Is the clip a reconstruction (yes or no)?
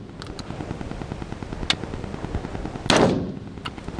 no